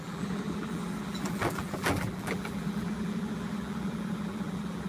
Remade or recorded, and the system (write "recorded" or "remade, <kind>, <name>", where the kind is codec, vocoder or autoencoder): remade, vocoder, BigVGAN v2